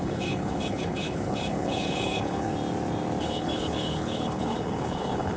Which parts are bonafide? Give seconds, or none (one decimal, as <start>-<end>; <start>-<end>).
2.5-3.2